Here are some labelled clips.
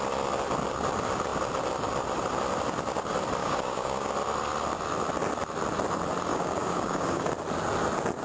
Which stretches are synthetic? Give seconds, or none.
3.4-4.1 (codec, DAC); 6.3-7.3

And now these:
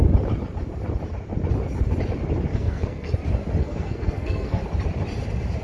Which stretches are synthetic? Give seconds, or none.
2.5-3.1 (codec, SNAC); 3.6-4.6

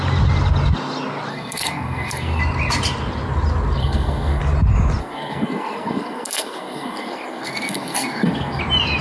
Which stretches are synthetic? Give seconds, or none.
1.3-2.4 (codec, SNAC); 3.8-4.4; 5.0-8.6

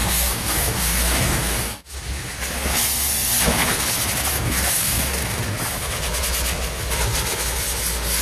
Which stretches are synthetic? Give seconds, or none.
0.0-1.9 (codec, DAC); 4.3-5.4